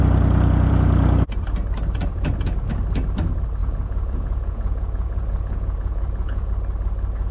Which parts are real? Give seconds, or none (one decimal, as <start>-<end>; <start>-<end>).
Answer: 0.0-3.6; 6.5-7.3